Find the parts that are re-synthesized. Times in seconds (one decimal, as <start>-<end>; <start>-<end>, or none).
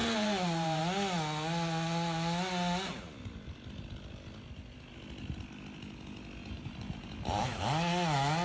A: 0.0-0.8; 6.4-7.6